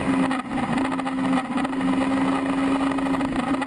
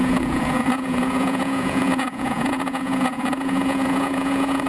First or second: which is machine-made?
second